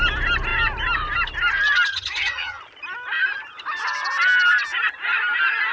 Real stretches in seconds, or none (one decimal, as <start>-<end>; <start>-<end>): 0.0-1.9; 2.6-5.7